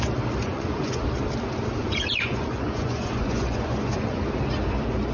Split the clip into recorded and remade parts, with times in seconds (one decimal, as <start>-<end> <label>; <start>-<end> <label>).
0.0-0.4 recorded; 0.4-1.0 remade; 1.0-1.8 recorded; 1.8-4.2 remade; 4.2-5.1 recorded